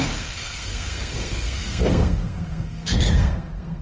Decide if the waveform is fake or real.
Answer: fake